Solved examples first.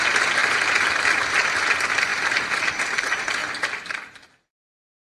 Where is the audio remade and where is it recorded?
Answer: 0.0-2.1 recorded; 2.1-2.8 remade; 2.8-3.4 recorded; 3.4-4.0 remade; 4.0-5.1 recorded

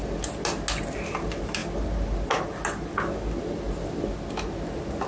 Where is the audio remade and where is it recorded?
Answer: 0.0-5.1 recorded

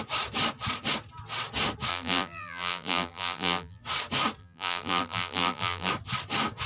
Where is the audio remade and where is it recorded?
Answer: 0.0-1.9 recorded; 1.9-3.8 remade; 3.8-4.4 recorded; 4.4-5.9 remade; 5.9-6.7 recorded

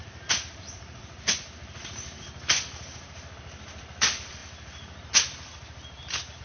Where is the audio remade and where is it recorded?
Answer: 0.0-3.1 remade; 3.1-6.4 recorded

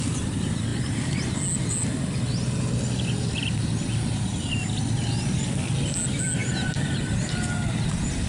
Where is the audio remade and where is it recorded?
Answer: 0.0-8.3 recorded

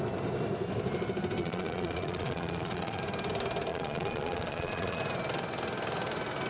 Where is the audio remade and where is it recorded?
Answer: 0.0-1.4 recorded; 1.4-3.0 remade; 3.0-3.7 recorded; 3.7-5.0 remade; 5.0-6.5 recorded

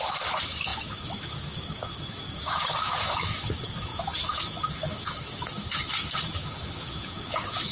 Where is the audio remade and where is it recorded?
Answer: 0.0-7.7 remade

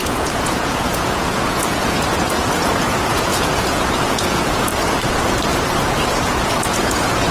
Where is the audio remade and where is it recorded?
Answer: 0.0-4.7 remade; 4.7-6.0 recorded; 6.0-7.3 remade